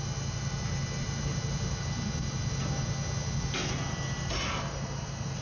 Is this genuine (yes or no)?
yes